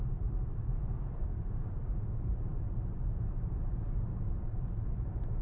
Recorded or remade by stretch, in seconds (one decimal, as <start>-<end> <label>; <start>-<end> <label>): 0.0-5.4 remade